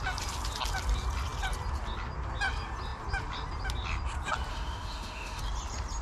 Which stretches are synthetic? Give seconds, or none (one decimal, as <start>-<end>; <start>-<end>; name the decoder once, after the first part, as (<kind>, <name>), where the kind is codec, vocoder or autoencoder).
4.5-5.4 (autoencoder, DAC-VAE)